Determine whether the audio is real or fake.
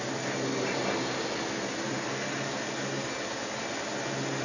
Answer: real